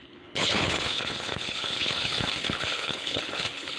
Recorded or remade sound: remade